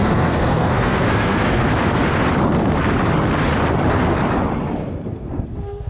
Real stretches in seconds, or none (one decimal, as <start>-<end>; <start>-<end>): 1.6-5.1